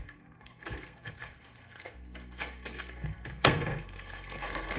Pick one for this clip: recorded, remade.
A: remade